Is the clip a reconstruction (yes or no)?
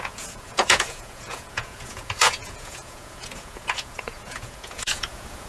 yes